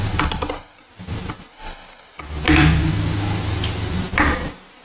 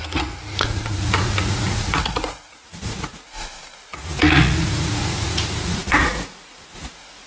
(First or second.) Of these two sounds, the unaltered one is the first